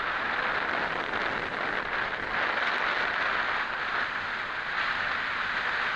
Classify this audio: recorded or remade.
recorded